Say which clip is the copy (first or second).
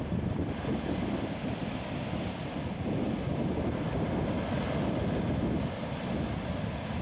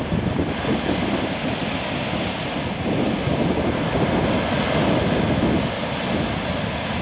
first